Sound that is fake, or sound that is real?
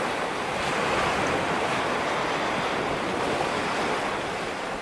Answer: real